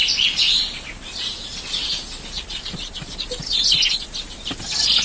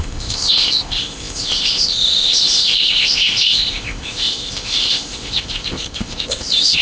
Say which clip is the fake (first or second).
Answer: second